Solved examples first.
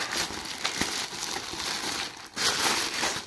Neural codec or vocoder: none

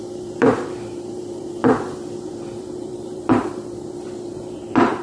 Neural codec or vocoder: vocoder, BigVGAN v2